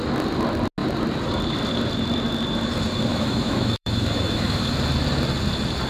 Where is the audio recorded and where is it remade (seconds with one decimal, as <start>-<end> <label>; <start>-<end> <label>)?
0.0-3.1 recorded; 3.1-4.6 remade; 4.6-5.9 recorded